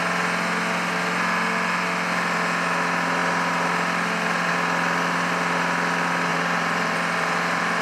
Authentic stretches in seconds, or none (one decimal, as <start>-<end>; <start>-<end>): 0.0-6.3